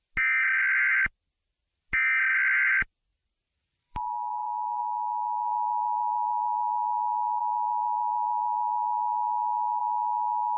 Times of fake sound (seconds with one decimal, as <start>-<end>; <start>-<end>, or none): 3.1-4.8